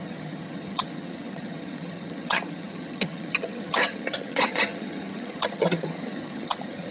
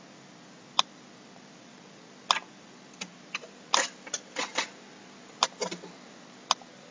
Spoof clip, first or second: first